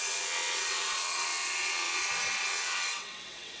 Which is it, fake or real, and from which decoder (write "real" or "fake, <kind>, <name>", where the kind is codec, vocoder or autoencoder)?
fake, vocoder, WaveNeXt